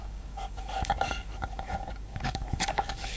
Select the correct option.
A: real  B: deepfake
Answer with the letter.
B